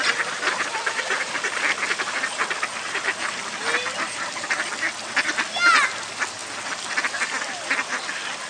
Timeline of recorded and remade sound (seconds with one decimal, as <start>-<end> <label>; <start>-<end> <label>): 0.0-8.5 recorded